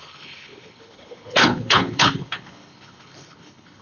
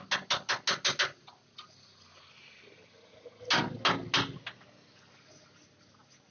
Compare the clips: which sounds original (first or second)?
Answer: second